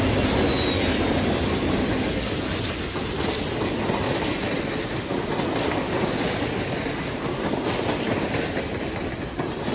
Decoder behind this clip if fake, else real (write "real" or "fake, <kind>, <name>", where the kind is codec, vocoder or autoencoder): real